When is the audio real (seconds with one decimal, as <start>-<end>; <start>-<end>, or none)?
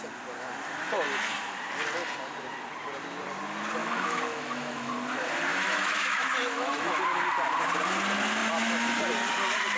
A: 0.0-3.8; 4.9-5.5; 7.0-9.8